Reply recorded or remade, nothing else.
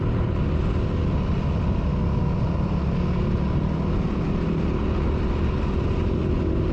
recorded